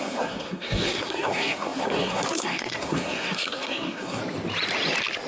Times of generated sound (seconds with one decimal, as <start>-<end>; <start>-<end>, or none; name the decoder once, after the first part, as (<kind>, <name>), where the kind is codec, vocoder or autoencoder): 0.0-4.2 (codec, SNAC)

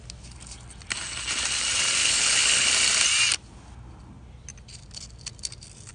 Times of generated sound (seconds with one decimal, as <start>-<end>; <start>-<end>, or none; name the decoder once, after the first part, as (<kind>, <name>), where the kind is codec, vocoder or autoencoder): 2.0-2.7 (codec, HILCodec)